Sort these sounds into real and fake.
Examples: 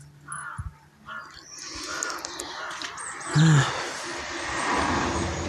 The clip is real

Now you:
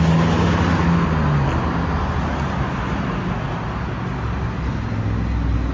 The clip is real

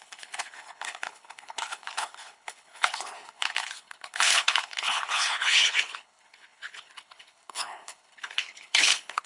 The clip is fake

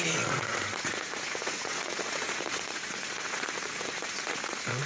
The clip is fake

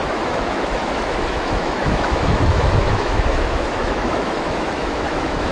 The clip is fake